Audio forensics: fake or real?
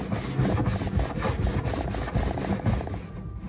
real